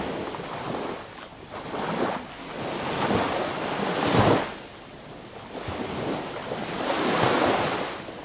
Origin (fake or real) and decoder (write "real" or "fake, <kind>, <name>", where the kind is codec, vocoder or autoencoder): real